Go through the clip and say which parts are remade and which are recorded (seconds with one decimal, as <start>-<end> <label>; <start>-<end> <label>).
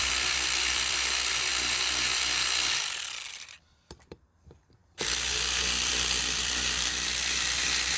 0.0-1.5 remade; 1.5-3.3 recorded; 3.3-4.8 remade; 4.8-5.6 recorded; 5.6-8.0 remade